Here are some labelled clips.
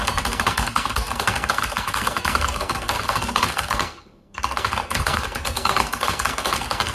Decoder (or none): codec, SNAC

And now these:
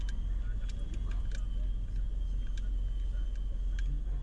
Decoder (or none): none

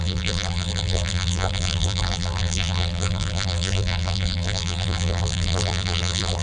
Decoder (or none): vocoder, BigVGAN v2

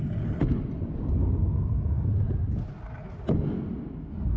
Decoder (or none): none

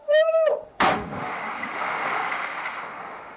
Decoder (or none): autoencoder, DAC-VAE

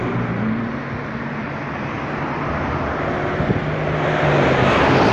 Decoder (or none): none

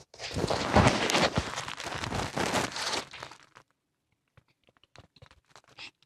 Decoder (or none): none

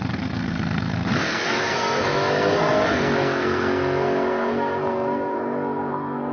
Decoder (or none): codec, SNAC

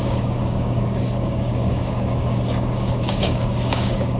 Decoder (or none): codec, DAC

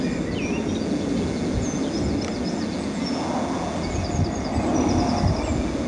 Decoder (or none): none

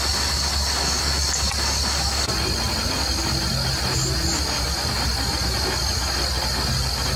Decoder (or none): none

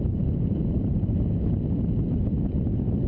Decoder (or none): none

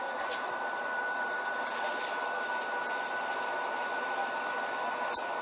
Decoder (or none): vocoder, BigVGAN v2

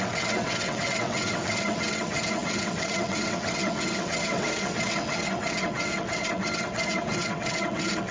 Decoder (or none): vocoder, WaveNeXt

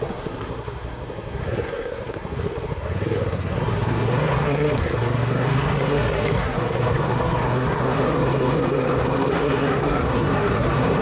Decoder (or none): codec, SNAC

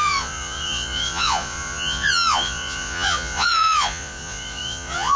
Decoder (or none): vocoder, Vocos